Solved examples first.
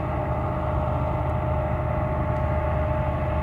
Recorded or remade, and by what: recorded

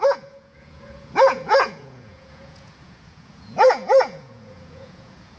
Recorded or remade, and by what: remade, vocoder, Vocos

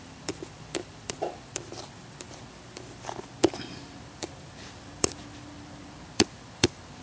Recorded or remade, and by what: remade, vocoder, BigVGAN v2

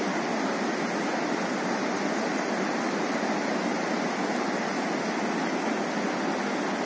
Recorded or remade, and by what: recorded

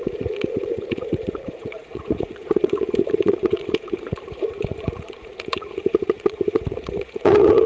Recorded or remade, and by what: remade, vocoder, Vocos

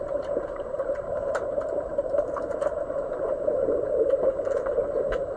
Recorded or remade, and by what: remade, vocoder, BigVGAN v2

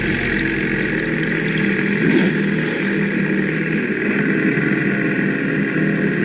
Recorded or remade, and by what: recorded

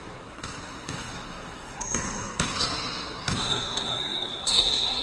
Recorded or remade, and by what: remade, codec, SNAC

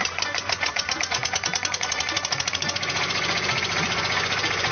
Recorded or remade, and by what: remade, vocoder, Vocos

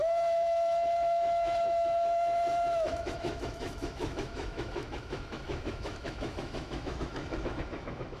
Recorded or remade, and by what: remade, autoencoder, DAC-VAE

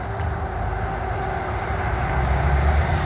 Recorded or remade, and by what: recorded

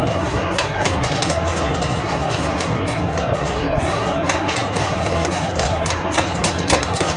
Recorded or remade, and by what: remade, codec, SNAC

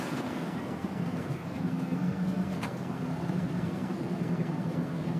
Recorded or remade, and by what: remade, codec, SNAC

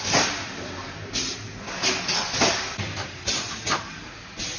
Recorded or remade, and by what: recorded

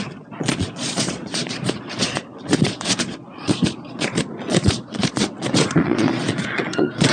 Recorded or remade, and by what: remade, vocoder, Vocos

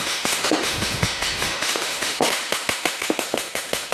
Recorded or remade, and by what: remade, autoencoder, DAC-VAE